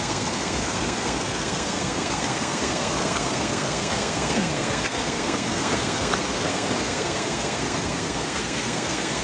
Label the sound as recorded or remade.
remade